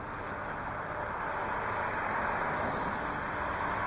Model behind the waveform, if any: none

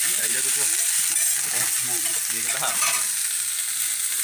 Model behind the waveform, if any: none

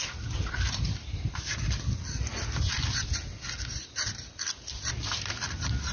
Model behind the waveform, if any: none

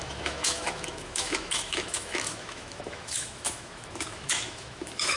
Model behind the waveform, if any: autoencoder, DAC-VAE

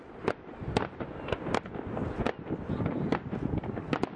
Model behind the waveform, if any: none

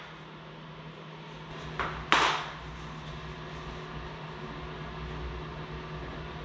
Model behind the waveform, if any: none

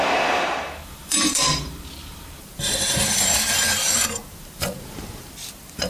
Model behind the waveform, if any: vocoder, BigVGAN v2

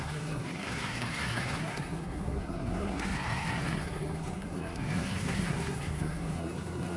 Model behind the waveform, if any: codec, SNAC